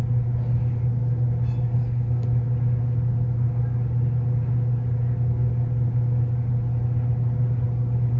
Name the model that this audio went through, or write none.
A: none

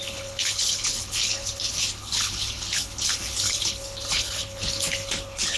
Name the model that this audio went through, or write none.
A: codec, HILCodec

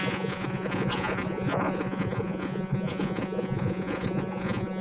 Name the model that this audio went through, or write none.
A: vocoder, Vocos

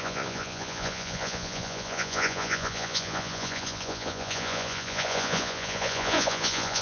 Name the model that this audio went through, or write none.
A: vocoder, Vocos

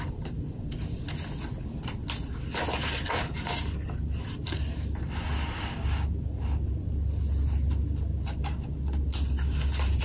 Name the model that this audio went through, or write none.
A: none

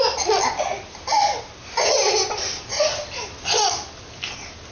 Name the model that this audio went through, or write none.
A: none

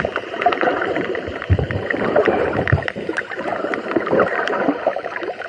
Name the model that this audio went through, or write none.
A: vocoder, BigVGAN v2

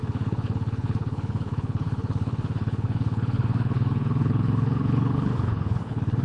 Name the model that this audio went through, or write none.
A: codec, HILCodec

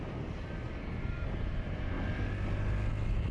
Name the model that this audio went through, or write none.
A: none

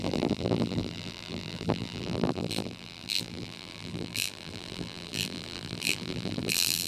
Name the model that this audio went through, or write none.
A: vocoder, BigVGAN v2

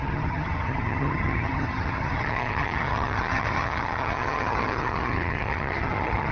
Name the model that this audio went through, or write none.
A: vocoder, HiFi-GAN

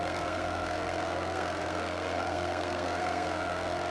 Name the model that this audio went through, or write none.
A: codec, SNAC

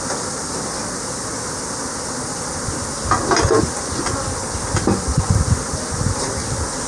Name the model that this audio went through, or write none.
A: none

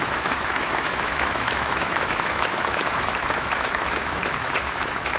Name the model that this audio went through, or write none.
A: autoencoder, DAC-VAE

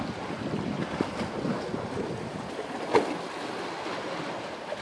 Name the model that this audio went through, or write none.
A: none